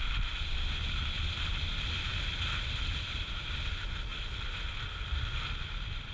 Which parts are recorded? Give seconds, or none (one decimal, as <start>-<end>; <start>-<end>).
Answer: 0.0-4.1